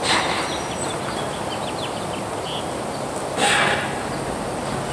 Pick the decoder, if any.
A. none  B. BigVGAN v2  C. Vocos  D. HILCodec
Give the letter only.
A